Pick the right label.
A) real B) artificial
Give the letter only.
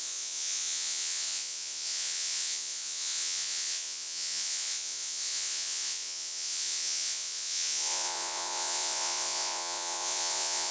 B